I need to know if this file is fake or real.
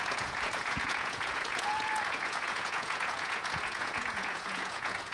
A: fake